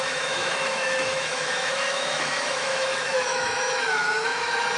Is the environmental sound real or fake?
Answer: fake